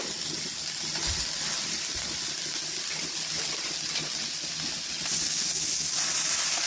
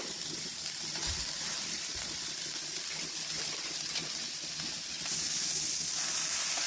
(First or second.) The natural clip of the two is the first